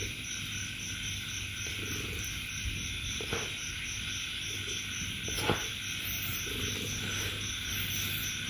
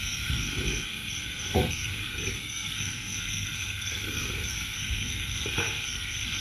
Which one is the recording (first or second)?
first